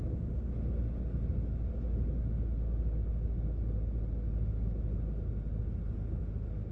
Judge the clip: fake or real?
real